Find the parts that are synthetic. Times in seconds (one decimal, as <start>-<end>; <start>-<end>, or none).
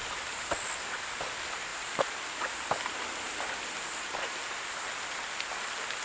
none